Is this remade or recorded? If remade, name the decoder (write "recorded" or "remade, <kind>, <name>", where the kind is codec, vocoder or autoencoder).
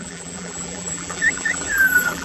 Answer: remade, vocoder, BigVGAN v2